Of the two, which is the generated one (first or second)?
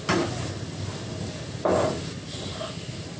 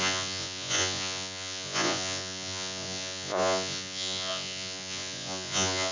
second